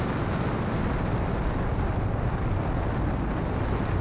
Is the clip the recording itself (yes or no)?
yes